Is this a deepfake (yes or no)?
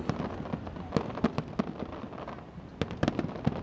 no